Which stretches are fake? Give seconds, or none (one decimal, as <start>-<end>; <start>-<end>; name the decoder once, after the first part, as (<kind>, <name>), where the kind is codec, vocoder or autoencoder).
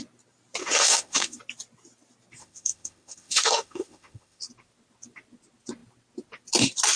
0.6-1.4 (autoencoder, DAC-VAE); 2.4-4.4